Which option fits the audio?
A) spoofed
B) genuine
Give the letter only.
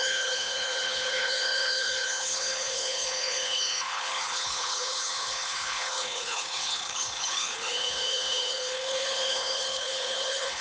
A